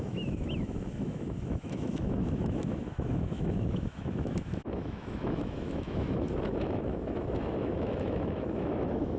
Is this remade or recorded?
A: remade